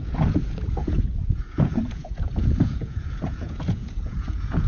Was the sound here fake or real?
fake